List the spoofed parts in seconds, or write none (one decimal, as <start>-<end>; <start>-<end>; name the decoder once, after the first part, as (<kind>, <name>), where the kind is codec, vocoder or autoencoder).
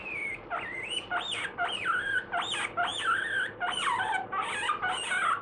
0.0-2.1 (vocoder, BigVGAN v2); 2.9-4.0